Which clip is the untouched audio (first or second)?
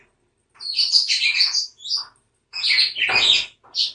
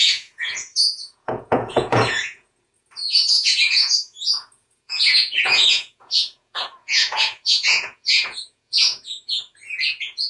first